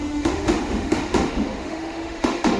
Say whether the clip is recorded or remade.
remade